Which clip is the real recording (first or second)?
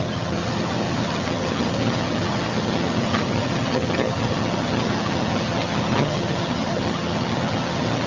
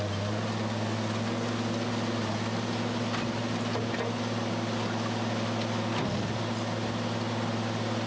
second